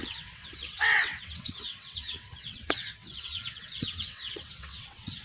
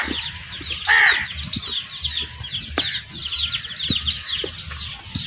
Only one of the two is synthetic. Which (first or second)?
first